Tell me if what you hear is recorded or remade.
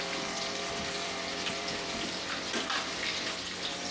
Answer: remade